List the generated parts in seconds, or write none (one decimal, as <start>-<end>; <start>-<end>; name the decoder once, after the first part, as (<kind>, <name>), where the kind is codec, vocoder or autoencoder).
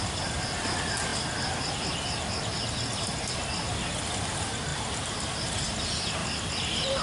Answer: 4.7-5.8 (vocoder, BigVGAN v2); 6.2-7.0